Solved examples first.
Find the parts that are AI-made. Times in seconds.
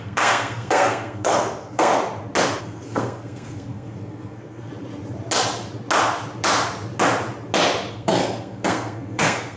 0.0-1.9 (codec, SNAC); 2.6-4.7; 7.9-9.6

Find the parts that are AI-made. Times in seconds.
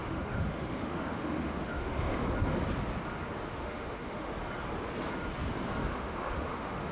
0.0-2.2 (autoencoder, DAC-VAE); 3.5-4.3; 5.9-6.9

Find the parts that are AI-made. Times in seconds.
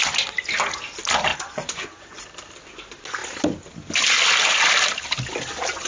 1.3-2.2 (vocoder, Vocos)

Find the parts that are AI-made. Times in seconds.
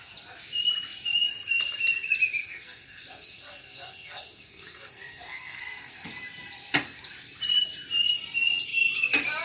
2.4-6.1 (codec, SNAC)